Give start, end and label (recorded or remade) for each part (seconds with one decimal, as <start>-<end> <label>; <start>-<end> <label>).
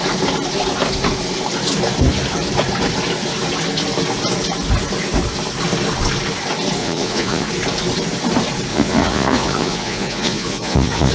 0.0-6.8 recorded; 6.8-7.5 remade; 7.5-8.7 recorded; 8.7-11.1 remade